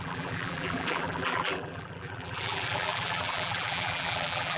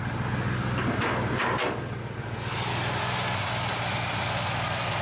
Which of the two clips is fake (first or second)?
first